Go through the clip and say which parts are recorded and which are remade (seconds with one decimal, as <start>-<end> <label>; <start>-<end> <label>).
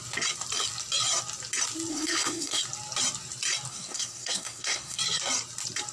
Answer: 0.0-1.9 recorded; 1.9-2.6 remade; 2.6-3.7 recorded; 3.7-5.0 remade; 5.0-5.9 recorded